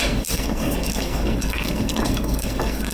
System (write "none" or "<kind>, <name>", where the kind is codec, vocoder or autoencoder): codec, SNAC